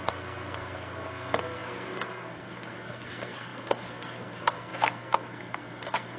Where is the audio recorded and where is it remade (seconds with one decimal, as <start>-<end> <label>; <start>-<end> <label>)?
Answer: 0.0-6.2 remade

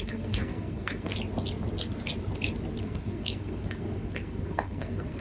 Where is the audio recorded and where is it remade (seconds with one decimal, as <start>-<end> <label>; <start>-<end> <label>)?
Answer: 0.0-1.1 remade; 1.1-2.8 recorded; 2.8-5.2 remade

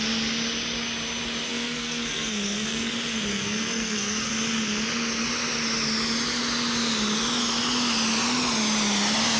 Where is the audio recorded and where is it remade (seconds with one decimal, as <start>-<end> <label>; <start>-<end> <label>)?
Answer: 0.0-1.5 recorded; 1.5-2.9 remade; 2.9-3.3 recorded; 3.3-4.3 remade; 4.3-9.4 recorded

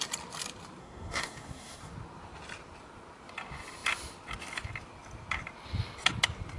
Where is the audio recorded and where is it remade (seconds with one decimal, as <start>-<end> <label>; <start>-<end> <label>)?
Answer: 0.0-0.8 recorded; 0.8-1.9 remade; 1.9-6.6 recorded